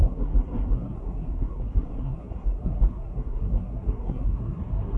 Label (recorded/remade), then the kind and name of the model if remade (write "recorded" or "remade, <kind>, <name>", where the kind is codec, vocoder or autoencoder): remade, codec, SNAC